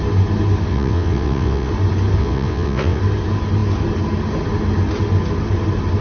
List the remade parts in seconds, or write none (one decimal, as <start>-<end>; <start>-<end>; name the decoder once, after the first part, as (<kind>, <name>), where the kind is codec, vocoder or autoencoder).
0.7-1.7 (vocoder, WaveNeXt); 2.2-3.0